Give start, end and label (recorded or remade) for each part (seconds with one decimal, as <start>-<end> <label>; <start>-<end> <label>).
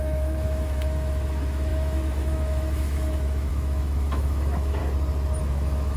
0.0-4.8 remade; 4.8-5.4 recorded; 5.4-6.0 remade